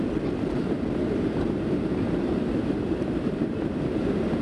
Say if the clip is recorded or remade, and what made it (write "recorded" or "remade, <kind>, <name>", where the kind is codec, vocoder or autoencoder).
remade, vocoder, BigVGAN v2